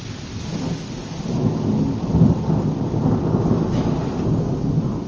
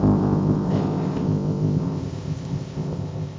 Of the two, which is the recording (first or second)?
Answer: first